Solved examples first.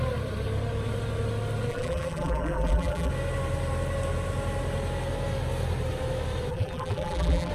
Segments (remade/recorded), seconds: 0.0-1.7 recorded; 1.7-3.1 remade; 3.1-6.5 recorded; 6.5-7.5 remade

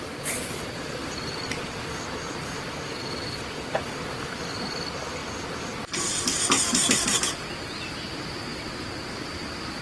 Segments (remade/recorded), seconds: 0.0-1.0 recorded; 1.0-1.6 remade; 1.6-5.2 recorded; 5.2-8.0 remade; 8.0-9.8 recorded

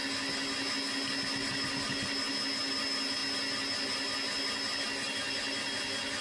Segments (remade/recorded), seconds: 0.0-1.4 recorded; 1.4-2.3 remade; 2.3-6.2 recorded

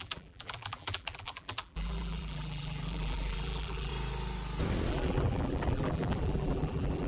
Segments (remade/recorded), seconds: 0.0-3.9 remade; 3.9-4.9 recorded; 4.9-7.1 remade

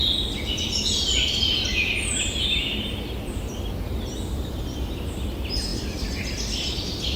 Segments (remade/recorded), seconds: 0.0-7.2 recorded